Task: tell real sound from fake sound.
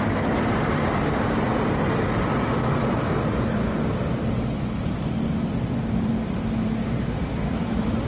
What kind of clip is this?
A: fake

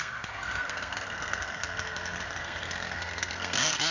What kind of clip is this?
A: fake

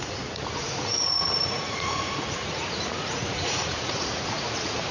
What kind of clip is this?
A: fake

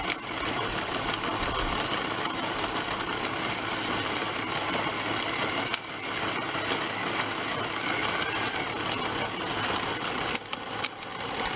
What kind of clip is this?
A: real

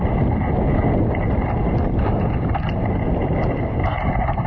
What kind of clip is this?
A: real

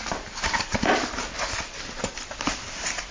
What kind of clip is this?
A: real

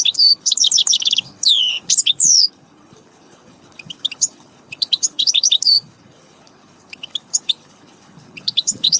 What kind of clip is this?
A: fake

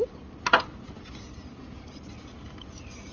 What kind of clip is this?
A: real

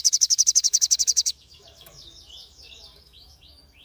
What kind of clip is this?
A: fake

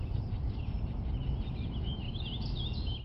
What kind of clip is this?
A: real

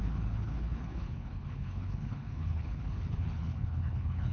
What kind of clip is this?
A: fake